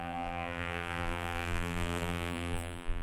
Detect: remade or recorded remade